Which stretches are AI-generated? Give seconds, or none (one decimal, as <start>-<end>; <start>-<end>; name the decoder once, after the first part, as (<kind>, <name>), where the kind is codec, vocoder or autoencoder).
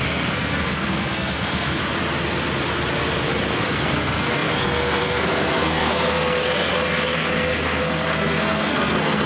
0.0-1.8 (codec, SNAC); 3.6-9.3